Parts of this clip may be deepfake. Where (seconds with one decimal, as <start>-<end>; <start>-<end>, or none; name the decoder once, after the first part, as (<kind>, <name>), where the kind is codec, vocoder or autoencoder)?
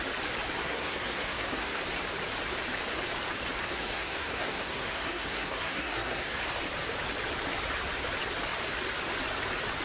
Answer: 0.6-1.8 (codec, SNAC); 3.6-6.4